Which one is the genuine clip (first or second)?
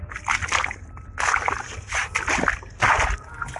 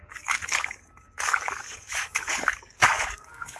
first